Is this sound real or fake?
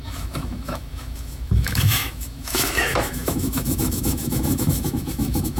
fake